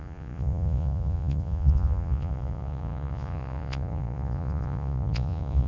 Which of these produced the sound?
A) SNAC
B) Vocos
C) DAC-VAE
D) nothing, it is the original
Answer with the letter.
B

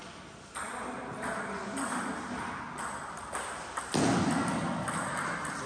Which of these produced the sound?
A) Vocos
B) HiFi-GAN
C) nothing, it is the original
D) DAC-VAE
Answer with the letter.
C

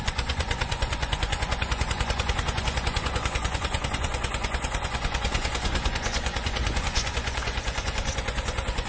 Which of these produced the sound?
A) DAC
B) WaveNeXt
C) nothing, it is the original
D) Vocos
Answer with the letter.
D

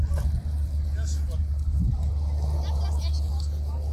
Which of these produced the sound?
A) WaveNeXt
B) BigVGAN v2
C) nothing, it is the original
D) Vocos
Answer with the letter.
C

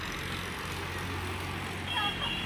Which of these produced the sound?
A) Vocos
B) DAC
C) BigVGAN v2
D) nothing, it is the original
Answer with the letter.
D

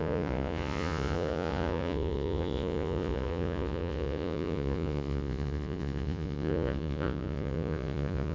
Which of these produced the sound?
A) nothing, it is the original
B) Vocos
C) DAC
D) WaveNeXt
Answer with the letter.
B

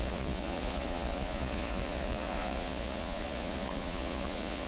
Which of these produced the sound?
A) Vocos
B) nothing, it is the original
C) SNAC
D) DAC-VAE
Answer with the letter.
A